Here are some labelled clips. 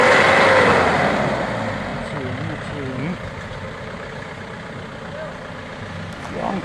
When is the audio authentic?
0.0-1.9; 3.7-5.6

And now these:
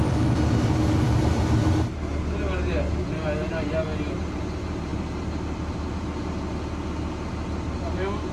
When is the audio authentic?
0.0-8.3